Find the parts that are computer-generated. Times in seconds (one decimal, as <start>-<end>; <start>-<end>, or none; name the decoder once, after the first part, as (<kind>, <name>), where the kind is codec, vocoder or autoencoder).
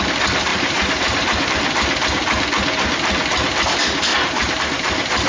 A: 0.5-1.5 (vocoder, BigVGAN v2); 4.1-4.6